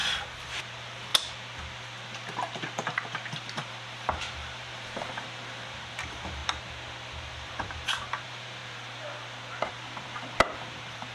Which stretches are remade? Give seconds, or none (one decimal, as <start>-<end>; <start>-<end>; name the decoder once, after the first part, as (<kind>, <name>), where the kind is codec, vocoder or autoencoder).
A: 0.6-1.1 (vocoder, BigVGAN v2); 3.3-6.4; 7.3-8.6; 9.7-11.1